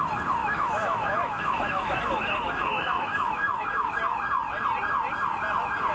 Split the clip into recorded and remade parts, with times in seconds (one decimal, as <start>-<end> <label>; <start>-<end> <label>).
0.0-0.4 recorded; 0.4-3.9 remade; 3.9-5.9 recorded